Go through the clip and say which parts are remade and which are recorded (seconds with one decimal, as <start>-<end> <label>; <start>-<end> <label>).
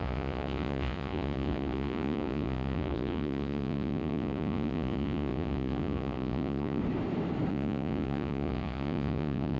0.0-6.8 remade; 6.8-7.5 recorded; 7.5-9.6 remade